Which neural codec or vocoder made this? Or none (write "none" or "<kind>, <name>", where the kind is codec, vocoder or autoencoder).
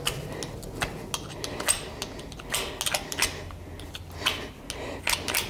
none